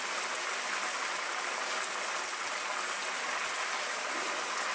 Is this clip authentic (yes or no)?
yes